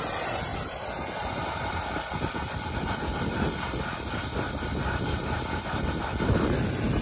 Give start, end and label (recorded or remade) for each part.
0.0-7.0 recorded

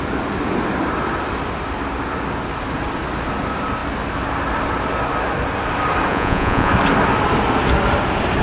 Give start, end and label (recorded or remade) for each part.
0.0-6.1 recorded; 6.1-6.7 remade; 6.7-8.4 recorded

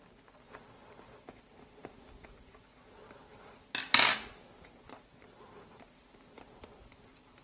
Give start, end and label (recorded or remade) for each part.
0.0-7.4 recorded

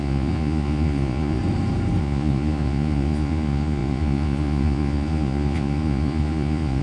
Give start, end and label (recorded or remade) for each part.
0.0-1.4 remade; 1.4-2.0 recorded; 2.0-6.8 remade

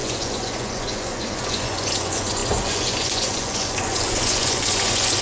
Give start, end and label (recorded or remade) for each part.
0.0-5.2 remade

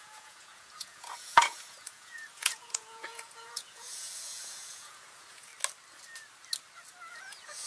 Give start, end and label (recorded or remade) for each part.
0.0-5.5 remade; 5.5-7.1 recorded; 7.1-7.7 remade